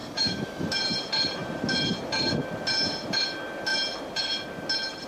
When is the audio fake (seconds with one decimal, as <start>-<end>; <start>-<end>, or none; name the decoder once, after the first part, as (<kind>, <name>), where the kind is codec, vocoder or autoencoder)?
0.0-0.8 (autoencoder, DAC-VAE)